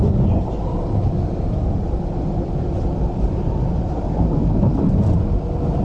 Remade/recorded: recorded